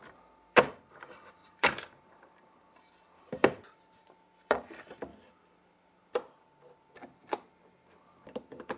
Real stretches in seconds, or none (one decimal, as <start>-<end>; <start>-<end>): 0.0-1.4; 2.6-8.8